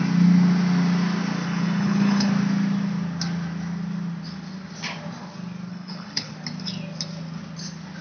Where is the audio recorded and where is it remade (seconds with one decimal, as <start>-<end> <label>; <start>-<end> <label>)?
0.0-1.4 recorded; 1.4-2.3 remade; 2.3-5.7 recorded; 5.7-6.3 remade; 6.3-8.0 recorded